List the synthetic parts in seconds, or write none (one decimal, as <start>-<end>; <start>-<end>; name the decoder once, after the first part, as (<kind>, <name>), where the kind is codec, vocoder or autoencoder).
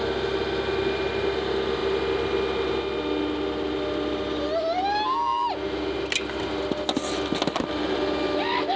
none